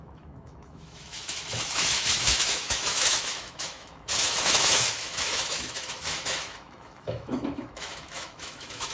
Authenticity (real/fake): fake